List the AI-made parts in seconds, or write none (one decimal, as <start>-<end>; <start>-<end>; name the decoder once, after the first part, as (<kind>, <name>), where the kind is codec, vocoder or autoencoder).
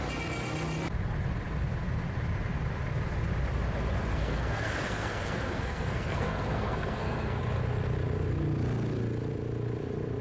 4.1-7.4 (codec, SNAC)